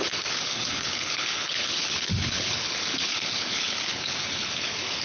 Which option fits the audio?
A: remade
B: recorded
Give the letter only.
A